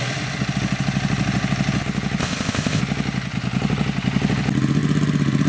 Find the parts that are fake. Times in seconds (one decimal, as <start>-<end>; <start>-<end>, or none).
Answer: 2.2-2.8